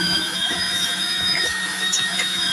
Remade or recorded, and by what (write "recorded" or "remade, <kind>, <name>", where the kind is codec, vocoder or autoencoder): remade, autoencoder, DAC-VAE